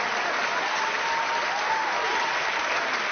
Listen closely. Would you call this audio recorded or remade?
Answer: recorded